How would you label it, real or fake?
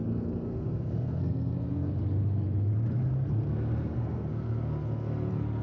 fake